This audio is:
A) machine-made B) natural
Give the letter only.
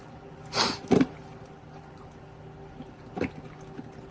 B